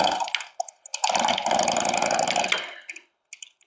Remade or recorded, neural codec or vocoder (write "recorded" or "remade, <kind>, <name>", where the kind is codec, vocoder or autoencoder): recorded